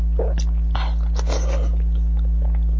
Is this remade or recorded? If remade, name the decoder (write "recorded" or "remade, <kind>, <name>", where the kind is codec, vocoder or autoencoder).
recorded